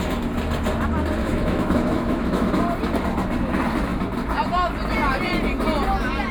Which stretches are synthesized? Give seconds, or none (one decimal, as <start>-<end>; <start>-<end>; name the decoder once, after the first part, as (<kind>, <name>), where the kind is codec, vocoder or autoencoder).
1.2-2.5 (autoencoder, DAC-VAE)